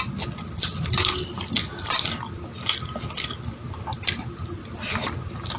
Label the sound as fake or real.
real